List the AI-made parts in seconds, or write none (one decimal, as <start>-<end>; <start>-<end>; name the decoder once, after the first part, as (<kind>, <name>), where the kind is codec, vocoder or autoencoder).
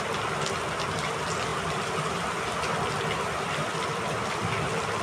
1.5-4.5 (vocoder, BigVGAN v2)